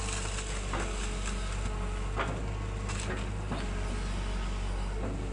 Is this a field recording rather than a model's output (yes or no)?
yes